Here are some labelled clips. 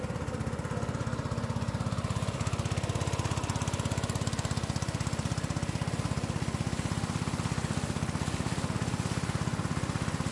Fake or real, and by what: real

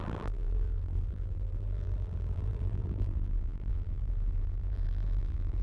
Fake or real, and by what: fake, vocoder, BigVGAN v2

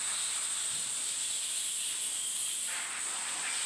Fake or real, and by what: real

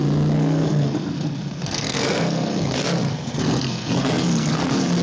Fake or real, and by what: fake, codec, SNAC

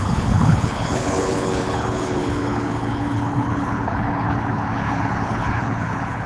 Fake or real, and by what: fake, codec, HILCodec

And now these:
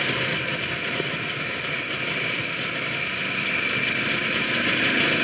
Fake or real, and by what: real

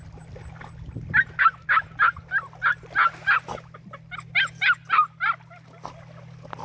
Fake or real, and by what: real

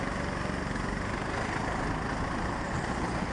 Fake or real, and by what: real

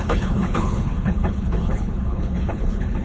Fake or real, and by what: fake, codec, HILCodec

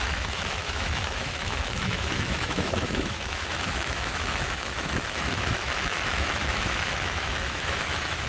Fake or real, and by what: fake, autoencoder, DAC-VAE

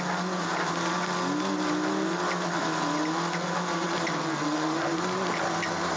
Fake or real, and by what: real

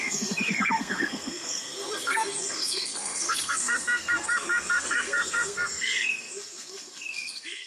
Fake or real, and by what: fake, codec, SNAC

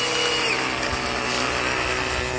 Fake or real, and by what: real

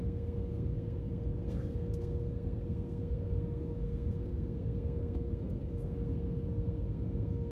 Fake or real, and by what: fake, codec, SNAC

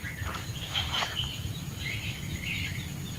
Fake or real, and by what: fake, vocoder, BigVGAN v2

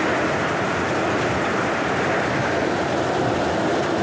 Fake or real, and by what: real